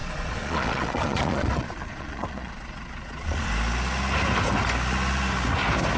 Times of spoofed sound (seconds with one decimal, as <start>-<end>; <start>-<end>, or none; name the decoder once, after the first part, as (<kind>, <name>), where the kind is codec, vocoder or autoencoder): 0.0-3.5 (vocoder, Vocos)